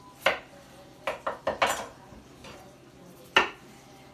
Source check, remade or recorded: recorded